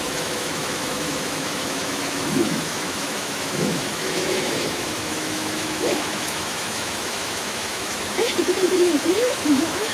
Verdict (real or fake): fake